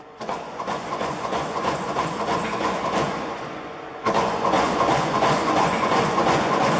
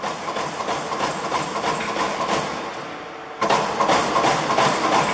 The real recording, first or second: second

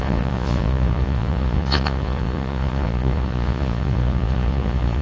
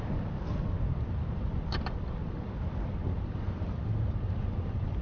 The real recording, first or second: second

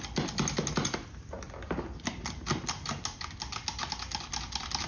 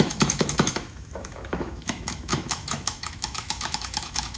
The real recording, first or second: first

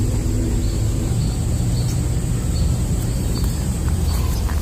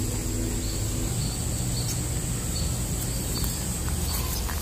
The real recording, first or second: second